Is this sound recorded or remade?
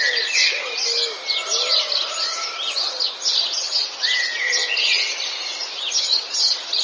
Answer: recorded